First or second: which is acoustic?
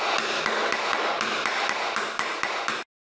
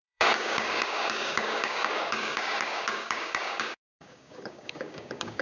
first